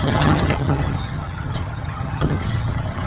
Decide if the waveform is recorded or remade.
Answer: remade